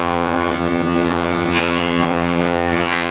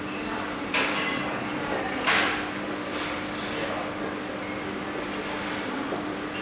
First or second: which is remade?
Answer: first